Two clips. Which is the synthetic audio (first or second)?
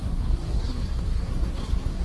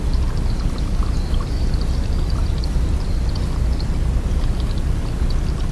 first